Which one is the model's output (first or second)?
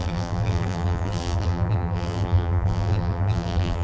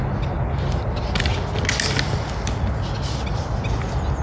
first